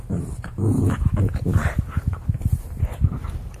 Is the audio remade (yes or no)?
no